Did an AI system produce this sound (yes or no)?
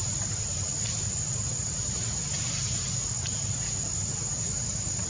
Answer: yes